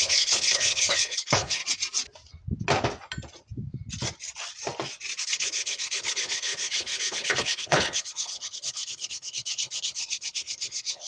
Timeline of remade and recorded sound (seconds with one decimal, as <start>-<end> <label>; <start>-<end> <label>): 0.0-1.6 remade; 1.6-5.2 recorded; 5.2-11.1 remade